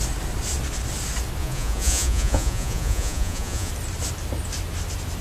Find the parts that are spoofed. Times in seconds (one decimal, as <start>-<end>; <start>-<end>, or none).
1.4-3.7